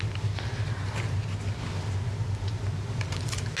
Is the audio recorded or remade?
recorded